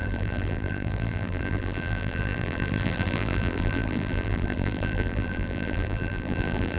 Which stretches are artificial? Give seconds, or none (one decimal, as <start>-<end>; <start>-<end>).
0.0-6.8